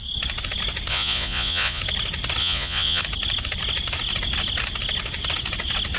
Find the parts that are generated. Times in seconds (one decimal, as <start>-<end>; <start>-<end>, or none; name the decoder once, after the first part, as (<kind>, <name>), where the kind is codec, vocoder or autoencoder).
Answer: 0.9-1.8 (vocoder, Vocos); 2.4-3.0